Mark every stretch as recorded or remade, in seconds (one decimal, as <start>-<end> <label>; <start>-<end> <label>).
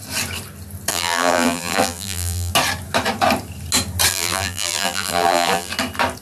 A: 0.0-0.9 recorded; 0.9-2.5 remade; 2.5-4.1 recorded; 4.1-5.7 remade; 5.7-6.2 recorded